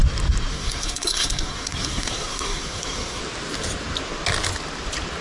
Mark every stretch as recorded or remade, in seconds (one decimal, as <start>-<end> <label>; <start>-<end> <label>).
0.0-0.5 recorded; 0.5-3.2 remade; 3.2-5.2 recorded